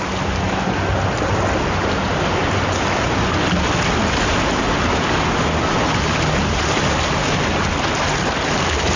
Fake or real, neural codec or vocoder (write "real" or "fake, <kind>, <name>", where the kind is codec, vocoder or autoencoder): real